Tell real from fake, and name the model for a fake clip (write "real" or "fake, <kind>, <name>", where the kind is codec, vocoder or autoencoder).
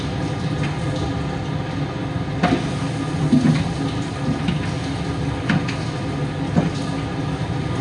real